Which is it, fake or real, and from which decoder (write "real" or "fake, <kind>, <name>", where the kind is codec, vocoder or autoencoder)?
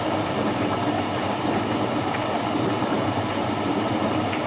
fake, vocoder, BigVGAN v2